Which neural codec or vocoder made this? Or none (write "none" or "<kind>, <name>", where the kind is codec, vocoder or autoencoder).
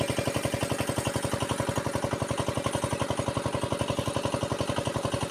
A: none